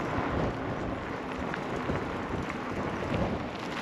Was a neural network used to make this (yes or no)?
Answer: no